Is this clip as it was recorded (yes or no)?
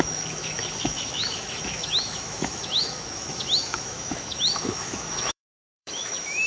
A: no